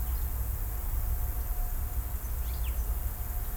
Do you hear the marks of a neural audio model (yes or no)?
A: no